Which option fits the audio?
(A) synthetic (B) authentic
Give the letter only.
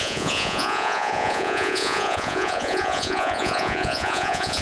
A